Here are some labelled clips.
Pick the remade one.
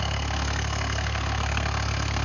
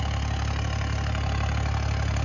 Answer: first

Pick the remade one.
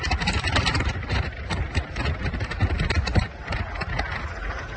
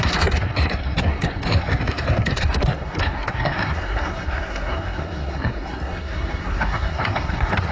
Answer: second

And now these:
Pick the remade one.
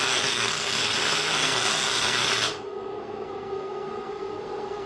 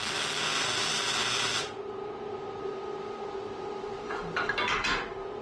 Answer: first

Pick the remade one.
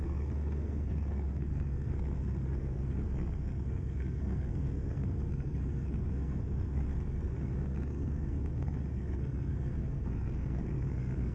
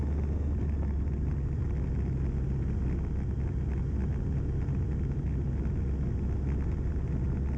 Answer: first